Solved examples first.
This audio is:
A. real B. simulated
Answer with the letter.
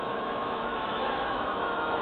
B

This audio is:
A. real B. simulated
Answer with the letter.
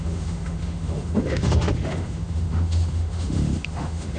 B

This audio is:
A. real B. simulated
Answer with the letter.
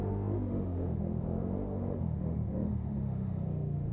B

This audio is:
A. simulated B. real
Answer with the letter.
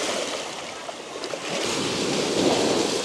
B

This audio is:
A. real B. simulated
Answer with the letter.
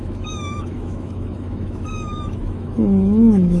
B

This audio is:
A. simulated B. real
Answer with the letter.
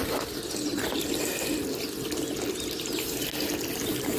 B